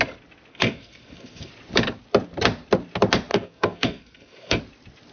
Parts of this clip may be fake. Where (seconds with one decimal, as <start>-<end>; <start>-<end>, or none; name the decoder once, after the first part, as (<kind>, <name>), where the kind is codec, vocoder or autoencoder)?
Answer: 0.5-1.5 (codec, SNAC); 3.3-4.6